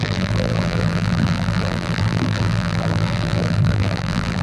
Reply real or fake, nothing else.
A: fake